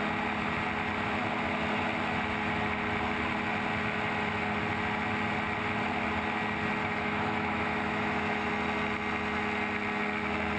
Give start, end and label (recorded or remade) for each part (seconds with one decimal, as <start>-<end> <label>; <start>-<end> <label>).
0.0-6.8 recorded; 6.8-8.5 remade; 8.5-10.6 recorded